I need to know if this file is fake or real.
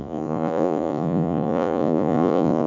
fake